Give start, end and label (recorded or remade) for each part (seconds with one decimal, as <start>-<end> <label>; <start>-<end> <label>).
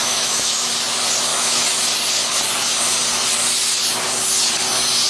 0.0-0.7 remade; 0.7-1.3 recorded; 1.3-1.8 remade; 1.8-5.1 recorded